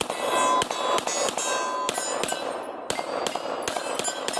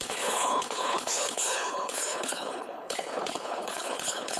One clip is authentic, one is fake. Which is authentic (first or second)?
first